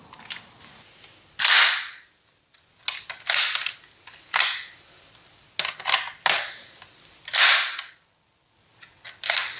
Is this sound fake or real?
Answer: real